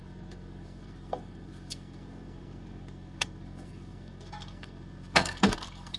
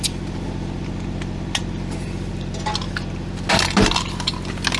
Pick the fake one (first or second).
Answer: first